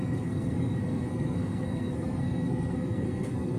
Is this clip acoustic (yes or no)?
no